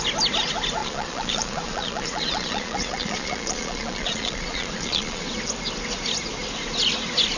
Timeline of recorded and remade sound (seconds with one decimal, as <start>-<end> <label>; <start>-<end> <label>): 0.0-0.8 recorded; 0.8-5.2 remade; 5.2-7.4 recorded